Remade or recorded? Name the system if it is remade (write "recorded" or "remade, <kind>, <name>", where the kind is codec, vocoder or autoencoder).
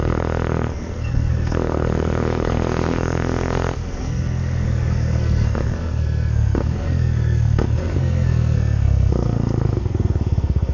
remade, codec, SNAC